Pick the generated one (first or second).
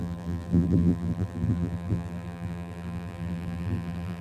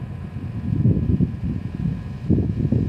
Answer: first